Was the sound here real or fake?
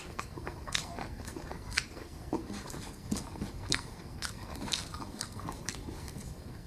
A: fake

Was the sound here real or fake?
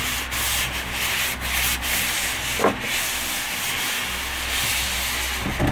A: real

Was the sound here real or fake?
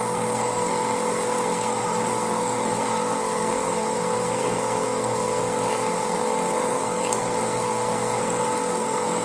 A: fake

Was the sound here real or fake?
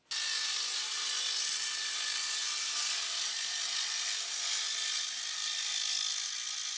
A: real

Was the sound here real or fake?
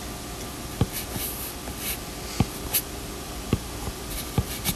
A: real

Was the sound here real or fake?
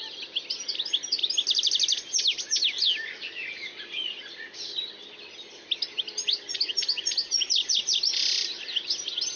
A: real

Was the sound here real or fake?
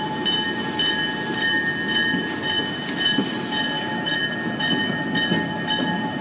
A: real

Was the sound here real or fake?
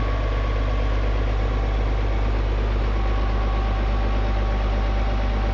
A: real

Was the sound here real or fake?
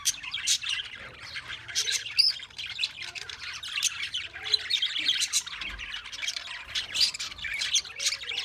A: fake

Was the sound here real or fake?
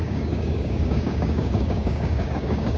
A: fake